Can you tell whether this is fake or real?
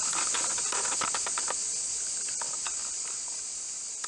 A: real